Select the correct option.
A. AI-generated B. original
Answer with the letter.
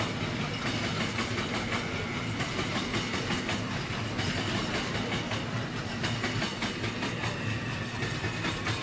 B